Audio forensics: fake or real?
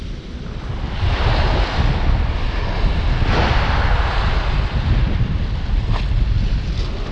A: real